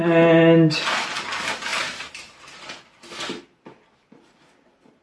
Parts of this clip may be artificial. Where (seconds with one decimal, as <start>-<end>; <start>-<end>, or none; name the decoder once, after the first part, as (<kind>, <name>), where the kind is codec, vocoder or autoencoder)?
none